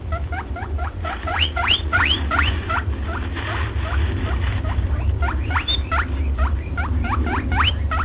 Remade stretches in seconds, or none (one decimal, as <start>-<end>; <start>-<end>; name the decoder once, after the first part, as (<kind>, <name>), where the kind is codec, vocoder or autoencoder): 0.6-2.8 (vocoder, Vocos)